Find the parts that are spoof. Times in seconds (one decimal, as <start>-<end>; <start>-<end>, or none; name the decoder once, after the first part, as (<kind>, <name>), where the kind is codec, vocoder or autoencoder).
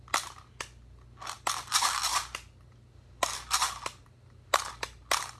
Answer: none